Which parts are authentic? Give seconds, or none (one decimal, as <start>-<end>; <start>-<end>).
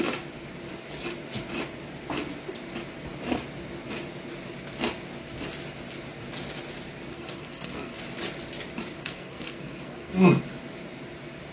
0.0-7.1; 8.0-9.0; 10.4-11.5